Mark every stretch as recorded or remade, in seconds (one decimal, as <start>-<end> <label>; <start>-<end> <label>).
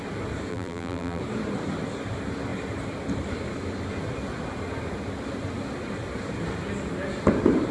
0.0-0.5 recorded; 0.5-1.2 remade; 1.2-7.7 recorded